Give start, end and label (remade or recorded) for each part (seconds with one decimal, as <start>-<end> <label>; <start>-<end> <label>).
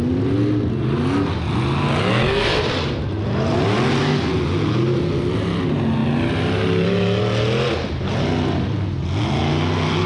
0.0-10.1 recorded